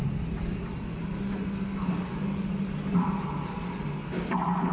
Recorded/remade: recorded